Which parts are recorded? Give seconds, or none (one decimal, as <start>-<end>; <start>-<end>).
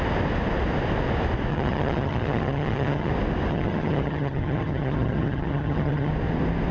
0.0-1.5; 3.1-3.5; 6.1-6.7